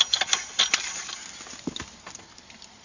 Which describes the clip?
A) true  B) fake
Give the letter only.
A